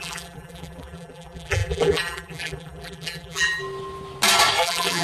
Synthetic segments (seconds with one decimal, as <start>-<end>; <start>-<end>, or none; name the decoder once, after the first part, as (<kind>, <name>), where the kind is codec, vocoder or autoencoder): 0.0-3.6 (vocoder, BigVGAN v2); 4.6-5.0